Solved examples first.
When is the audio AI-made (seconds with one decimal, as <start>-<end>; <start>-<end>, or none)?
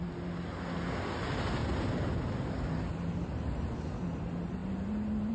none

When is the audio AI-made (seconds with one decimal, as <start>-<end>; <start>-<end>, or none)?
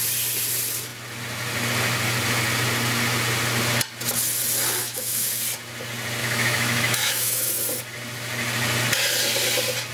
4.8-5.4; 6.2-7.5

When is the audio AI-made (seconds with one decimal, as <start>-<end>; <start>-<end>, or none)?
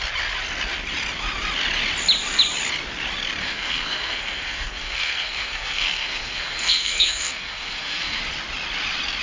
3.4-8.2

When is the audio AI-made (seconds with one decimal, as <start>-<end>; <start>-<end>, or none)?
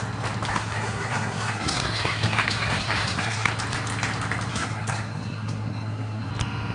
0.5-3.5; 4.5-6.3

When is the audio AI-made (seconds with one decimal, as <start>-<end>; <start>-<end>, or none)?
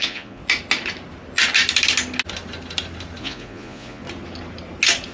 0.0-0.4; 3.2-4.0